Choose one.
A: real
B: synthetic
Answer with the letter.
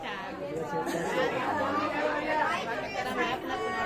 A